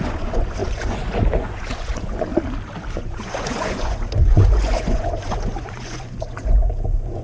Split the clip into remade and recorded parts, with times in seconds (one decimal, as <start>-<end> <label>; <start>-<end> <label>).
0.0-2.3 remade; 2.3-2.9 recorded; 2.9-7.2 remade